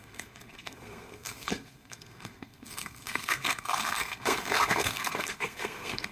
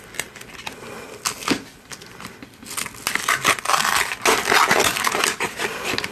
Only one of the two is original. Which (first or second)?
second